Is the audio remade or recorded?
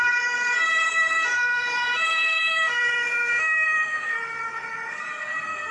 remade